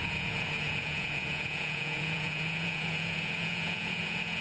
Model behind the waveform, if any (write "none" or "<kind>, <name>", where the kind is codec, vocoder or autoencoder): vocoder, Vocos